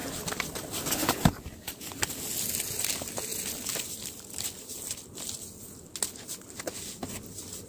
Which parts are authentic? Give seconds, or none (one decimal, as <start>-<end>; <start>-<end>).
0.5-3.3; 5.5-7.7